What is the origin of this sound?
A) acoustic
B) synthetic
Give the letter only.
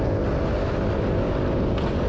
A